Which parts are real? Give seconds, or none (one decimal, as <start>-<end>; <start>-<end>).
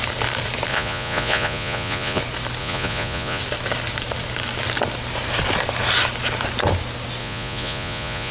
0.0-0.7; 2.2-2.6; 3.4-7.2